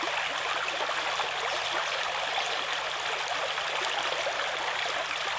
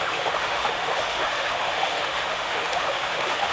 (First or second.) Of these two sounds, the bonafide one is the first